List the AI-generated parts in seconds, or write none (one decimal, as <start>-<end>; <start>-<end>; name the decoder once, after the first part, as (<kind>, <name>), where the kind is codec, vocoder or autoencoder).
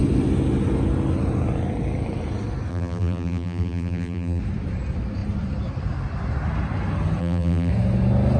2.7-4.4 (vocoder, BigVGAN v2); 7.2-7.7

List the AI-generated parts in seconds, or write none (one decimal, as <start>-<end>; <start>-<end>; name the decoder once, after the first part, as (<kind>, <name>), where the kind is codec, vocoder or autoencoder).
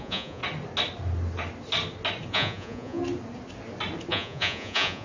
0.0-0.4 (vocoder, Vocos); 2.3-3.0; 4.1-5.0